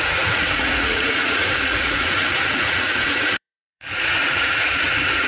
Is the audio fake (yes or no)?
yes